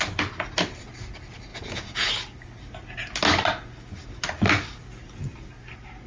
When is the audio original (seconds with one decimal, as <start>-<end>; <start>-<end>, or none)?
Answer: 0.0-1.5; 2.1-6.1